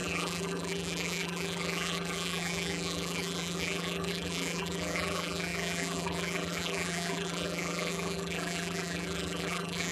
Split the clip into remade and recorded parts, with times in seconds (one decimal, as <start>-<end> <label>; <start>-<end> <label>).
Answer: 0.0-9.9 remade